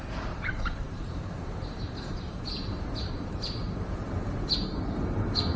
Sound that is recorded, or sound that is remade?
remade